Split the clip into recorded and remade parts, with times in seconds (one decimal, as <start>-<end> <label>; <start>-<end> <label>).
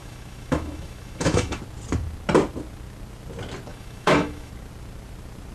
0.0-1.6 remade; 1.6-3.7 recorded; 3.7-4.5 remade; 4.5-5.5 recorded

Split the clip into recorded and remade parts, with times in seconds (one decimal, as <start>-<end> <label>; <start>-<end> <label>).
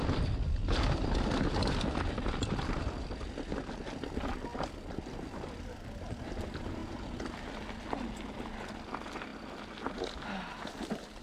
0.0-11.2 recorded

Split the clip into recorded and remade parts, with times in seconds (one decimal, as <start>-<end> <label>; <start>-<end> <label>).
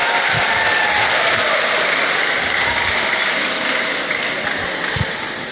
0.0-5.5 recorded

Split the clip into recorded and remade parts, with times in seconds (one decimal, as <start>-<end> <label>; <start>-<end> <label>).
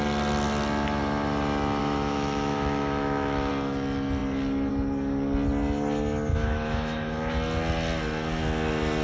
0.0-1.8 recorded; 1.8-3.5 remade; 3.5-6.3 recorded; 6.3-7.3 remade; 7.3-9.0 recorded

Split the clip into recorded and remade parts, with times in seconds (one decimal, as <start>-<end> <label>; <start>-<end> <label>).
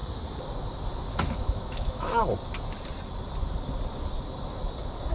0.0-1.1 recorded; 1.1-2.2 remade; 2.2-5.1 recorded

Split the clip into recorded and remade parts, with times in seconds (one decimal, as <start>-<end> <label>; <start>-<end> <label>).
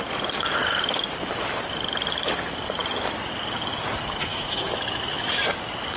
0.0-4.3 recorded; 4.3-5.3 remade; 5.3-6.0 recorded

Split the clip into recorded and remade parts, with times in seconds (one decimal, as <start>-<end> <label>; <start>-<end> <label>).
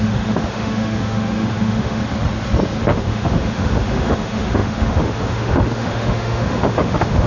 0.0-2.0 remade; 2.0-2.9 recorded; 2.9-7.3 remade